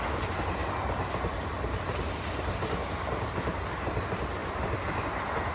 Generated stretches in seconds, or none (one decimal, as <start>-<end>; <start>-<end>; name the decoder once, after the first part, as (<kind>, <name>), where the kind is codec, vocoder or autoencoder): 4.4-5.0 (vocoder, BigVGAN v2)